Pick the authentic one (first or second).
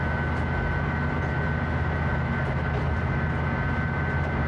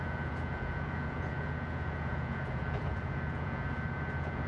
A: first